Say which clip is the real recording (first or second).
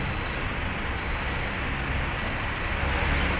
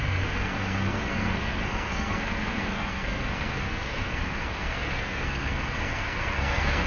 first